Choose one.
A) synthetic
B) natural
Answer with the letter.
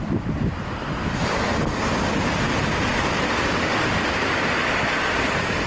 A